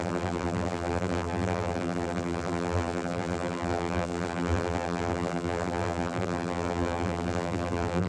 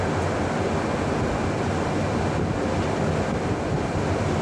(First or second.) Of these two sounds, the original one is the second